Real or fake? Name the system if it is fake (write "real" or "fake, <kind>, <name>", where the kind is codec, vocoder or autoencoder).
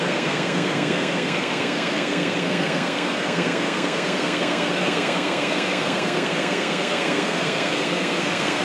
fake, codec, SNAC